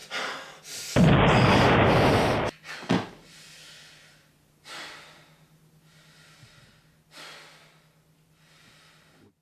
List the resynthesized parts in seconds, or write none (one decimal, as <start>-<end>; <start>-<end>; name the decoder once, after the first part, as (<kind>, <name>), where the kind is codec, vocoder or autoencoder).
none

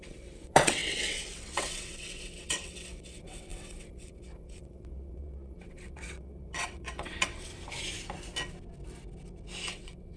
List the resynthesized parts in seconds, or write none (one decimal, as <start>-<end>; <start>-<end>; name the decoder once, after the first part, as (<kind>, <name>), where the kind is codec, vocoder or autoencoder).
0.0-7.5 (vocoder, WaveNeXt); 9.7-10.2

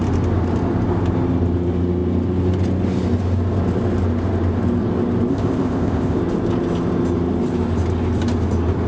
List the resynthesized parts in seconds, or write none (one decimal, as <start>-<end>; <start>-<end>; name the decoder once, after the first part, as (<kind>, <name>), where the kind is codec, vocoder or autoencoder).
5.3-6.2 (codec, ZipCodec)

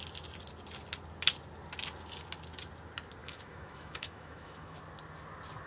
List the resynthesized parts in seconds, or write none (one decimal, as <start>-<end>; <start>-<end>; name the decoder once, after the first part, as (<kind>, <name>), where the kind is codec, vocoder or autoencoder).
3.2-4.8 (autoencoder, DAC-VAE)